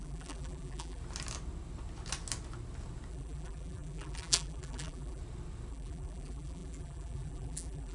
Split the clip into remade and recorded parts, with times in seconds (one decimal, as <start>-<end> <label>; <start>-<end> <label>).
0.0-1.0 remade; 1.0-3.1 recorded; 3.1-5.2 remade; 5.2-5.7 recorded; 5.7-7.9 remade